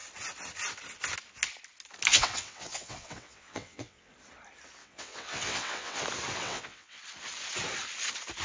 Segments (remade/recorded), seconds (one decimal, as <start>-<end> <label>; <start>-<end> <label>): 0.0-2.1 recorded; 2.1-4.1 remade; 4.1-4.8 recorded; 4.8-6.0 remade; 6.0-6.4 recorded; 6.4-7.0 remade; 7.0-8.4 recorded

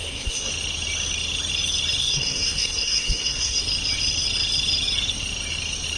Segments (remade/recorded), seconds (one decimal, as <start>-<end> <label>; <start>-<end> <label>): 0.0-0.5 remade; 0.5-2.0 recorded; 2.0-3.6 remade; 3.6-6.0 recorded

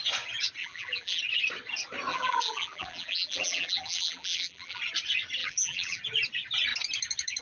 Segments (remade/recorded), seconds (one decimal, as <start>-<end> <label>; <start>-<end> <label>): 0.0-0.6 recorded; 0.6-1.2 remade; 1.2-2.1 recorded; 2.1-4.8 remade; 4.8-5.4 recorded; 5.4-6.0 remade; 6.0-7.4 recorded